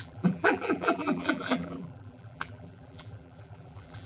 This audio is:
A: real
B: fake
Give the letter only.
B